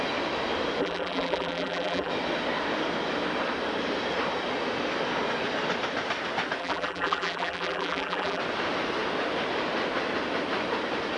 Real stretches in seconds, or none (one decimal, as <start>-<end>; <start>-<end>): 0.0-0.8; 2.1-6.6; 8.4-11.2